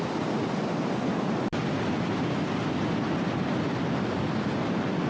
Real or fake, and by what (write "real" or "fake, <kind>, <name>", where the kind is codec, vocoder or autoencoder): real